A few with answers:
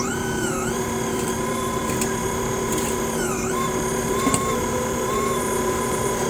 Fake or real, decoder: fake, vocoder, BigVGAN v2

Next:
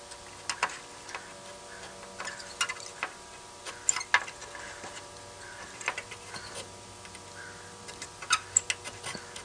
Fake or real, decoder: real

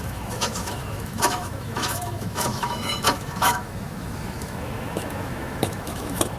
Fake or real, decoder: fake, autoencoder, DAC-VAE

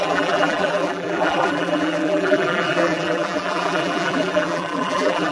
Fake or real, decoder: fake, vocoder, BigVGAN v2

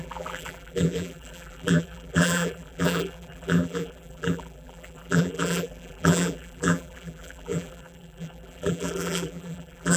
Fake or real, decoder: fake, vocoder, BigVGAN v2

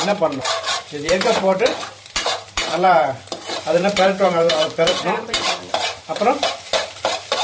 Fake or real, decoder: fake, vocoder, BigVGAN v2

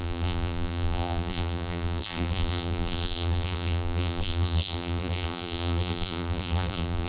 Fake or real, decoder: fake, vocoder, BigVGAN v2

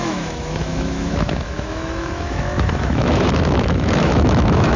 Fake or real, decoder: fake, autoencoder, DAC-VAE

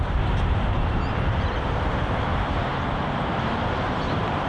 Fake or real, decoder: fake, vocoder, BigVGAN v2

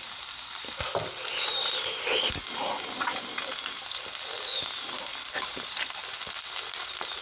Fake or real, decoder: real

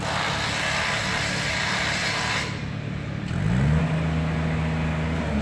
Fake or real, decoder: real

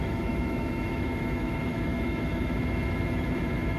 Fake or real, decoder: fake, autoencoder, DAC-VAE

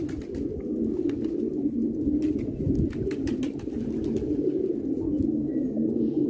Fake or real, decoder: real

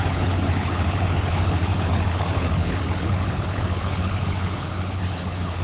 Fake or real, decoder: fake, codec, HILCodec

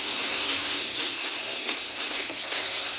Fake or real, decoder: fake, codec, SNAC